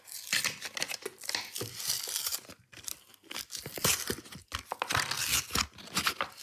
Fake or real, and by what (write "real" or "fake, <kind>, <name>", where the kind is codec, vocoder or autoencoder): real